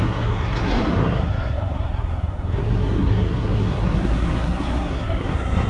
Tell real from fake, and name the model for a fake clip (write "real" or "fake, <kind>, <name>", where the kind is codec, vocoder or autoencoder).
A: fake, codec, SNAC